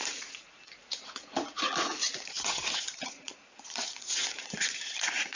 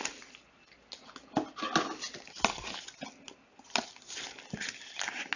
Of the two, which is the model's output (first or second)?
first